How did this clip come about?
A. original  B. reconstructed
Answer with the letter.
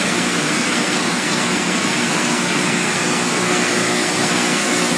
B